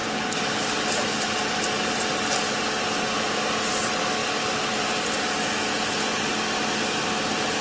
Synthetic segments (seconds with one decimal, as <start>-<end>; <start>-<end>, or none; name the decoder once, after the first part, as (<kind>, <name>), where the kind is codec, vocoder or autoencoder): 4.2-4.9 (vocoder, BigVGAN v2)